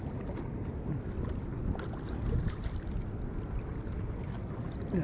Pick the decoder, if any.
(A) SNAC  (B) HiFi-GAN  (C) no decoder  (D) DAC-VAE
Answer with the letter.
C